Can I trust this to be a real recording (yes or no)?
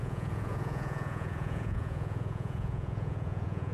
no